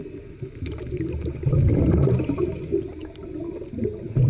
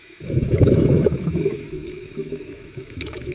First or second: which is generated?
second